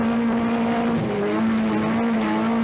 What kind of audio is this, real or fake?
real